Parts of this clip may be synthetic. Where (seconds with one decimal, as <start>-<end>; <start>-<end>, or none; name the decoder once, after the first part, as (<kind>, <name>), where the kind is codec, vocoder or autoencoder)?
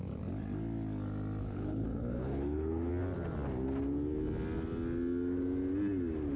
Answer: 1.4-2.9 (codec, HILCodec)